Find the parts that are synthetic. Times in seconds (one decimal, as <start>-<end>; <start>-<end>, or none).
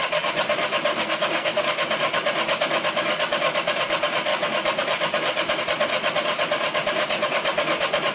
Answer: 0.9-1.6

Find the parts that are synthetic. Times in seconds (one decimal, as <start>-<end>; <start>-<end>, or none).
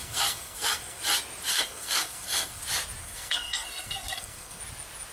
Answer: 0.0-1.0; 1.5-2.6; 3.0-4.6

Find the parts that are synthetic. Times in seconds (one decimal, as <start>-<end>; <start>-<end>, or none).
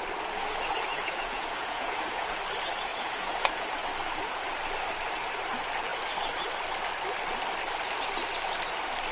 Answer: 0.9-2.4; 2.9-3.7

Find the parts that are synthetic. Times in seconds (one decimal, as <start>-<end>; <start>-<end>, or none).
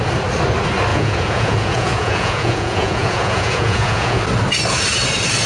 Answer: 0.9-4.2